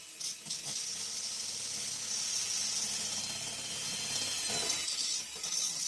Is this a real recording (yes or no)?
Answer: yes